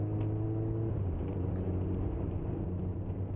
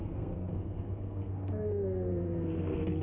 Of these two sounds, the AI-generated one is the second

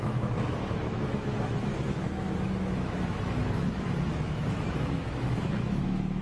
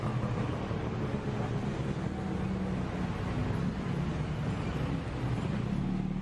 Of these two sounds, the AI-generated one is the first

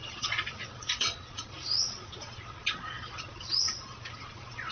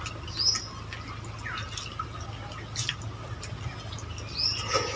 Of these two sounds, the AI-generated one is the first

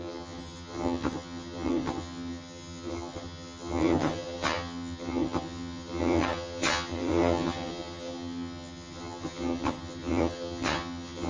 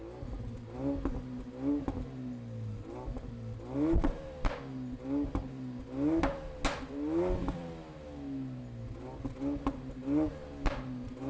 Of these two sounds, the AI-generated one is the first